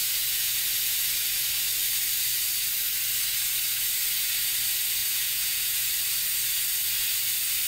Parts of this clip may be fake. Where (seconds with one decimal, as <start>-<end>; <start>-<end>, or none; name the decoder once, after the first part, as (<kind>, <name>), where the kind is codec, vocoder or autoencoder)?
0.0-0.6 (vocoder, Vocos); 5.0-5.9